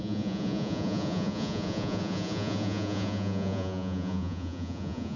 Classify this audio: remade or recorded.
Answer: remade